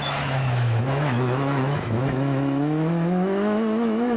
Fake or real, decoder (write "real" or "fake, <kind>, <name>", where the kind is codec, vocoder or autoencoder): fake, autoencoder, DAC-VAE